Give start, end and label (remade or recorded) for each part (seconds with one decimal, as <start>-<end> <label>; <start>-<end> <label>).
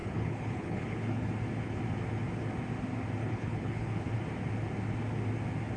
0.0-1.3 remade; 1.3-3.2 recorded; 3.2-4.1 remade; 4.1-5.8 recorded